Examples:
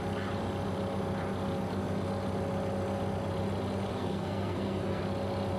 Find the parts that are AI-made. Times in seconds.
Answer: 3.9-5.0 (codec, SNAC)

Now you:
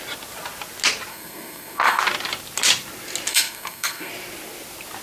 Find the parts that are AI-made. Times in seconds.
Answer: 1.1-2.0 (codec, SNAC); 3.3-4.1

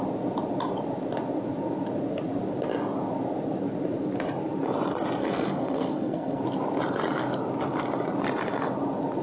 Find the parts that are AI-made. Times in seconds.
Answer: 5.2-6.4 (codec, SNAC)

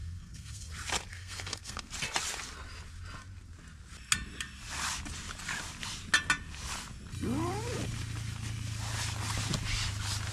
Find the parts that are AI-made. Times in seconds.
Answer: 0.0-0.7 (codec, SNAC); 1.1-1.9